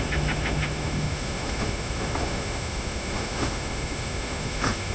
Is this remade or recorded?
remade